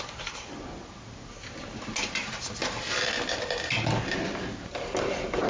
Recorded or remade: recorded